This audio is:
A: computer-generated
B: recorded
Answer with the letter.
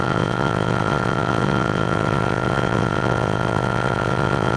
A